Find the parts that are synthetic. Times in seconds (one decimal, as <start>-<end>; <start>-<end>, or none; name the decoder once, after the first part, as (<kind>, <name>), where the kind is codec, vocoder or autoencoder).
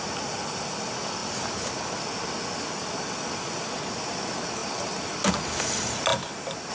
none